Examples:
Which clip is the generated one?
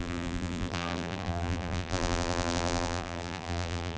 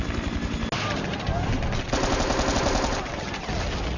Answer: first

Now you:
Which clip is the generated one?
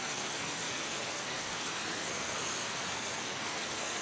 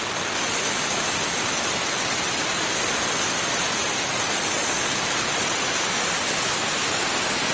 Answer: first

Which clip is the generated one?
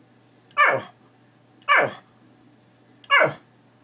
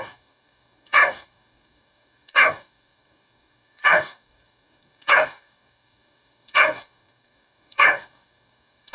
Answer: second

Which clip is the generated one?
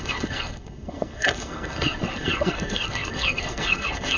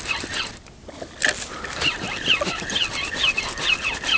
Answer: first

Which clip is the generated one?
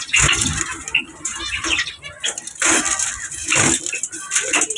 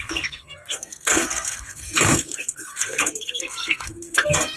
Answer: second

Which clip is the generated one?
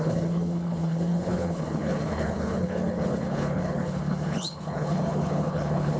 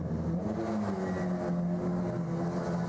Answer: first